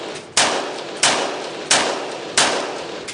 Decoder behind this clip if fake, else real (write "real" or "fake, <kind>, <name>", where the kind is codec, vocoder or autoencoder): real